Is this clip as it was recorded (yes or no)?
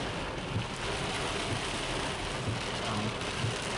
yes